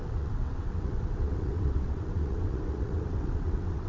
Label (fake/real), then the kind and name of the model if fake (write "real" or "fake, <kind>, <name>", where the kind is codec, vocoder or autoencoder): fake, vocoder, WaveNeXt